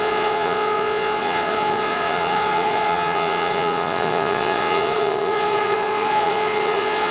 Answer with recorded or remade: remade